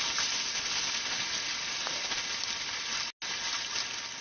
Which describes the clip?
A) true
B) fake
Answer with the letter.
A